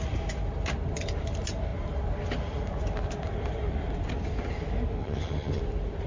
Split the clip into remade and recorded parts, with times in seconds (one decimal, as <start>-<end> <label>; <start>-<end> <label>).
0.0-5.0 recorded; 5.0-5.6 remade; 5.6-6.1 recorded

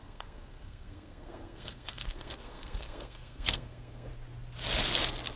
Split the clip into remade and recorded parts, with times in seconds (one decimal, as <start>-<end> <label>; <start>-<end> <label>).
0.0-4.1 remade; 4.1-5.4 recorded